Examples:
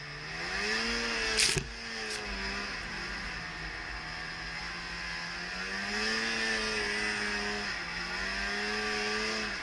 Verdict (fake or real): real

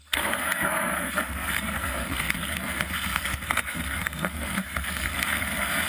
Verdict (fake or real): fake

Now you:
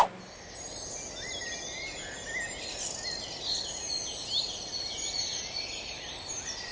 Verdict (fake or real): real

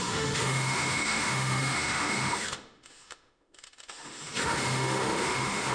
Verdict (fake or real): fake